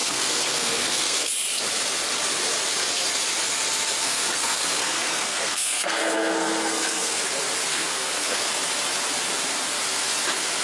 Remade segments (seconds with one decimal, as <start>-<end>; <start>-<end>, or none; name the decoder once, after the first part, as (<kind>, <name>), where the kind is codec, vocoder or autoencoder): 0.0-1.3 (codec, SNAC); 4.0-7.2; 7.7-8.5